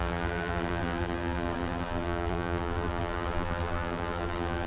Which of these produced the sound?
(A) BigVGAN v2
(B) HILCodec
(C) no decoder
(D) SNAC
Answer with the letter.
A